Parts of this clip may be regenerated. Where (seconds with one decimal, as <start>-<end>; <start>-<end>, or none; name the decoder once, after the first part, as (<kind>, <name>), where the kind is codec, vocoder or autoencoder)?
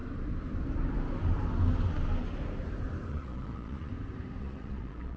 3.1-3.9 (vocoder, Vocos); 4.4-5.2